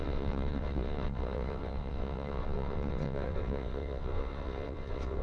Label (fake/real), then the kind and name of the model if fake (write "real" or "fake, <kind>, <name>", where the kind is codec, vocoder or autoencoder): fake, vocoder, WaveNeXt